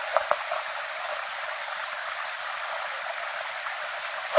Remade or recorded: recorded